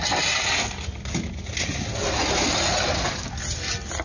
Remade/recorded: recorded